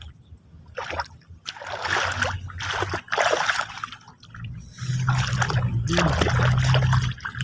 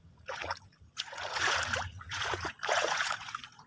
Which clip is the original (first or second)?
first